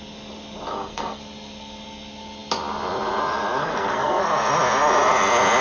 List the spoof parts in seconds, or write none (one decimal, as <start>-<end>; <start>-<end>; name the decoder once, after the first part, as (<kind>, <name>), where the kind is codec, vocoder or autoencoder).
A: 0.7-1.2 (codec, SNAC); 3.6-4.2